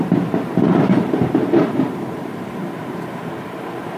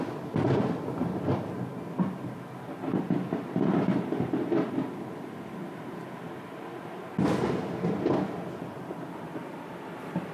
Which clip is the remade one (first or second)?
first